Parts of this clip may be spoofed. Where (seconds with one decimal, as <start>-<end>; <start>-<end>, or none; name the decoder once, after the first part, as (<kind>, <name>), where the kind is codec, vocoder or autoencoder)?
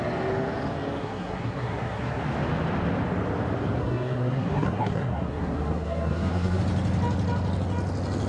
1.0-2.2 (codec, SNAC); 3.8-6.6